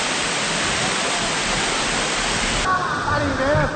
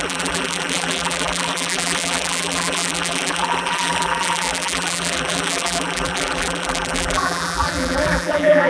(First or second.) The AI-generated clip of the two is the second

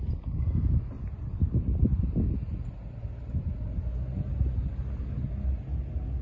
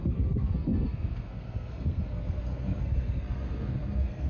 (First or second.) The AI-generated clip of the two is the second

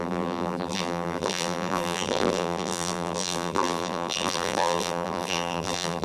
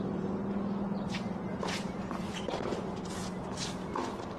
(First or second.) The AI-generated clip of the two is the first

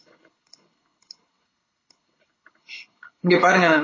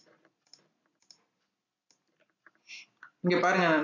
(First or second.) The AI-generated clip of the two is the first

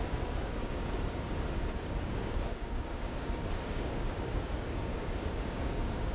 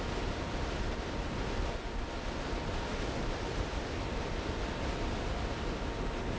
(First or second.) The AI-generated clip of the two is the first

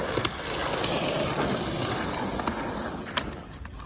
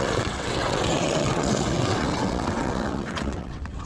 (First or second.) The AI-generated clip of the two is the second